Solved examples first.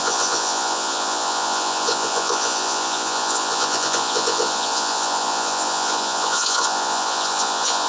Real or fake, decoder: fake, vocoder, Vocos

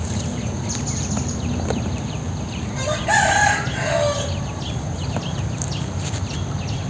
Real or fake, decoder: real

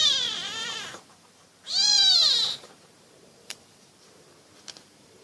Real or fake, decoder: fake, vocoder, BigVGAN v2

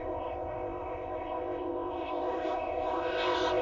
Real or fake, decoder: fake, codec, ZipCodec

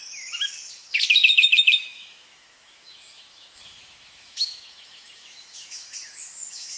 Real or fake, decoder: fake, autoencoder, DAC-VAE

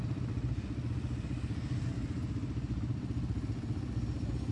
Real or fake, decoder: real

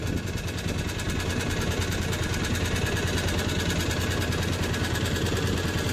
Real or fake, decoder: real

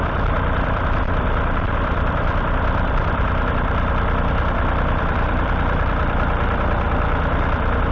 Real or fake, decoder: fake, vocoder, BigVGAN v2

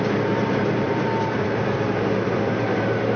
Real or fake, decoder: fake, vocoder, BigVGAN v2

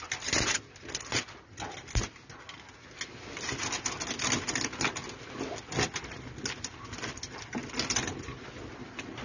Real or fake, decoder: real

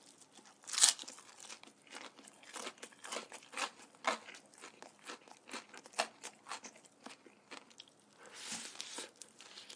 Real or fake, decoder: real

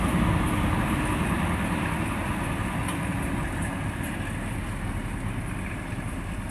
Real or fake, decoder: real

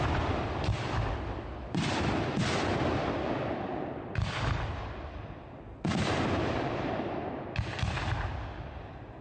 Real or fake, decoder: real